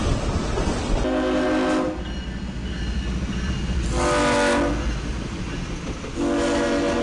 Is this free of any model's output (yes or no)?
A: yes